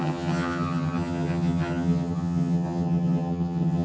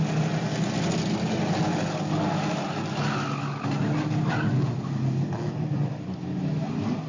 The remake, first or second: first